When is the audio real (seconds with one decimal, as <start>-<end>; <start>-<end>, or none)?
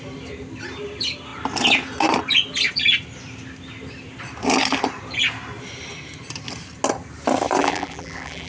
0.0-7.6